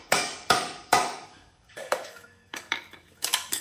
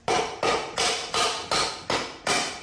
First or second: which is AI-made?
first